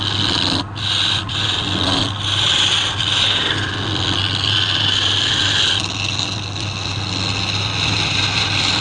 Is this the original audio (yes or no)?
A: yes